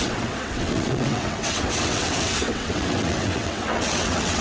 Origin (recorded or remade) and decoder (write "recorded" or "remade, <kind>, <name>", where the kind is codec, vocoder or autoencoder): remade, vocoder, WaveNeXt